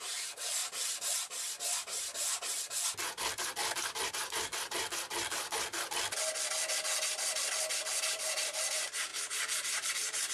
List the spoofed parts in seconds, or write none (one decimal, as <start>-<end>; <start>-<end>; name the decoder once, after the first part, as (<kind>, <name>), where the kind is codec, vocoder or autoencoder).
0.0-0.6 (vocoder, BigVGAN v2); 4.1-4.5; 8.0-10.3